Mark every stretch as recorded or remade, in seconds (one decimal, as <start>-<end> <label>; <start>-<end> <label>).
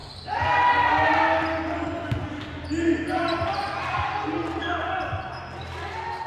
0.0-4.6 recorded; 4.6-5.2 remade; 5.2-6.3 recorded